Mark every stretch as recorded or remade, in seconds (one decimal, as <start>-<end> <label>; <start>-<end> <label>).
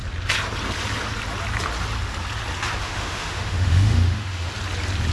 0.0-2.8 recorded; 2.8-4.5 remade; 4.5-5.1 recorded